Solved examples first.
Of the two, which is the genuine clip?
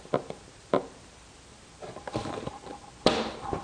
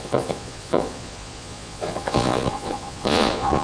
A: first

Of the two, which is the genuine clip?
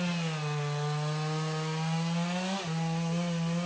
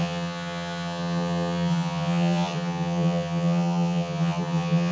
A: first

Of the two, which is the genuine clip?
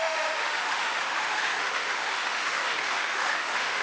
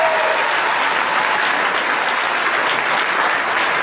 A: second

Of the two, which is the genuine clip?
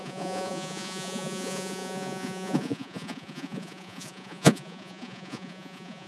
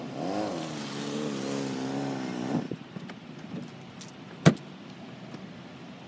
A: second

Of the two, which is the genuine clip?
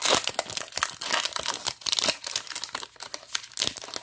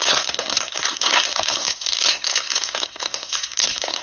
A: first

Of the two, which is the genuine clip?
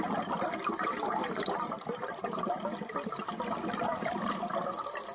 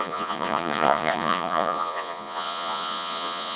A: first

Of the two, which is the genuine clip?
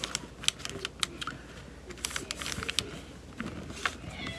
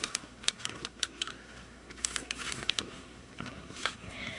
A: first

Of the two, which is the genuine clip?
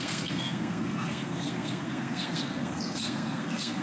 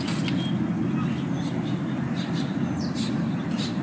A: second